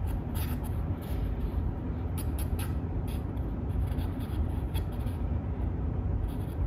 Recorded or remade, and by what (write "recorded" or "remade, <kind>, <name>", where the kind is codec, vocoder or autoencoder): remade, vocoder, BigVGAN v2